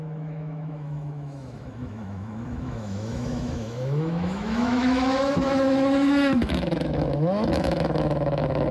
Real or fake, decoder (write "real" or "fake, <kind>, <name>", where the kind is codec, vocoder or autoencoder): fake, autoencoder, DAC-VAE